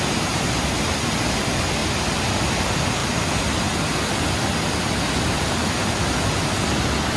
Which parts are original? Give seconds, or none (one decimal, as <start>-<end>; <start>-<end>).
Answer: 0.0-7.2